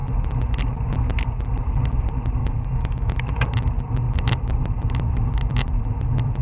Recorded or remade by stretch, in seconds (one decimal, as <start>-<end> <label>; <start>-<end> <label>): 0.0-2.4 recorded; 2.4-3.1 remade; 3.1-6.4 recorded